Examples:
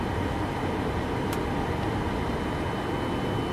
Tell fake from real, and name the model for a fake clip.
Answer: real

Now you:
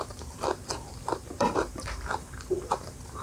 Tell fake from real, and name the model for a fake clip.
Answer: fake, vocoder, BigVGAN v2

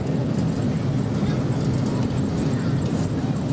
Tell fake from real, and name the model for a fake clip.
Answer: real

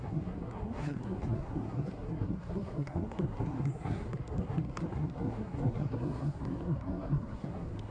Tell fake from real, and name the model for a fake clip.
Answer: fake, codec, SNAC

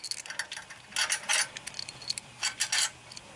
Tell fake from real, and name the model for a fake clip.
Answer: real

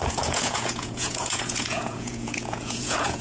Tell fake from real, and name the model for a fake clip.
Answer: fake, vocoder, Vocos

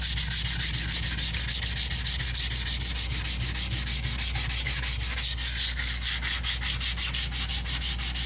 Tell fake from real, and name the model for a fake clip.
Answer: real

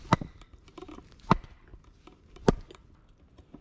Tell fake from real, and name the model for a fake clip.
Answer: real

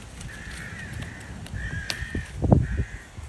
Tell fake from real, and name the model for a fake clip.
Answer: real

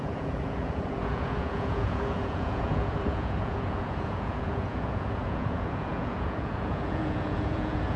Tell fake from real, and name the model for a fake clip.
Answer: fake, vocoder, Vocos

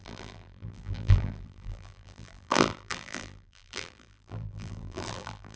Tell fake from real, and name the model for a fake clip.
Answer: fake, vocoder, BigVGAN v2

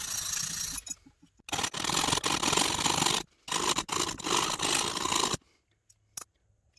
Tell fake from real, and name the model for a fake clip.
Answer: real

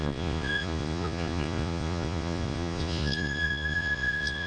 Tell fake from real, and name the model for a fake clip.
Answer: fake, vocoder, Vocos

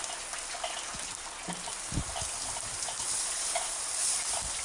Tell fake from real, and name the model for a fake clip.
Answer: real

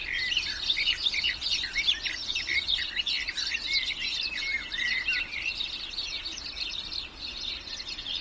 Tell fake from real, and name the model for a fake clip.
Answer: real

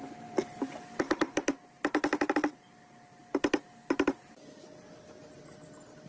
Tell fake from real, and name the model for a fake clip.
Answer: real